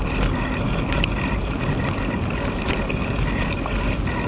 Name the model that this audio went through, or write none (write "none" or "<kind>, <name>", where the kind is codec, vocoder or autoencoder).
none